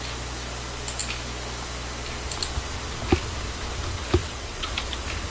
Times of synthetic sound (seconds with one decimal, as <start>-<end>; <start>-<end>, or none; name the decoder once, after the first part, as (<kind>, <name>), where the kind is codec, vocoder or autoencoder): 4.2-4.7 (vocoder, WaveNeXt)